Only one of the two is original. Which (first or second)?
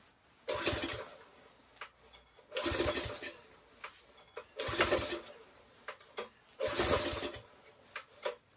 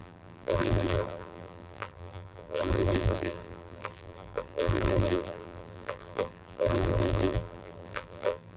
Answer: first